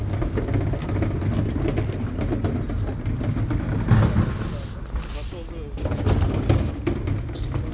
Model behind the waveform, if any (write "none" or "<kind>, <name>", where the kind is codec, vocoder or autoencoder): none